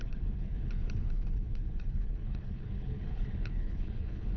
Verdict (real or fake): fake